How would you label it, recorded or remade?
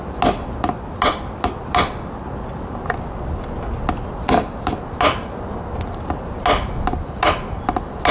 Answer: recorded